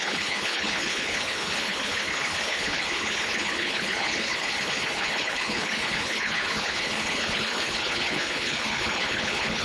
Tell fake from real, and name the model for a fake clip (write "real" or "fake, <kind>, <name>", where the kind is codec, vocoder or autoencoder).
fake, codec, HILCodec